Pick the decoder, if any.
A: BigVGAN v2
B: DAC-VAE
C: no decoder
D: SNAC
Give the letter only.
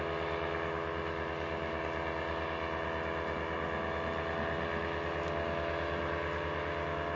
C